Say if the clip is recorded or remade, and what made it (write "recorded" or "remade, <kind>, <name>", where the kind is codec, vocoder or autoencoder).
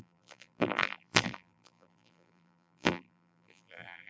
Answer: remade, vocoder, BigVGAN v2